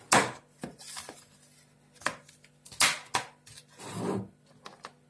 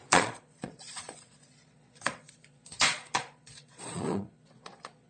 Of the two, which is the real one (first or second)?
first